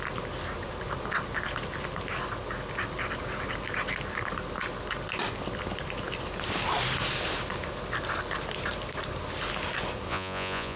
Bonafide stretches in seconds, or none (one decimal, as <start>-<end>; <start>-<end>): 0.0-10.1